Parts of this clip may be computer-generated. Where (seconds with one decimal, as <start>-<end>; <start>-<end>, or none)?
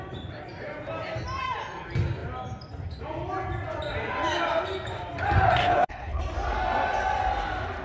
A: 5.6-6.2